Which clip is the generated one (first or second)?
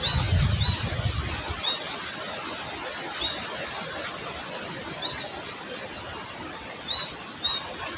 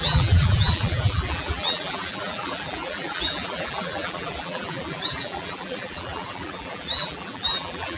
second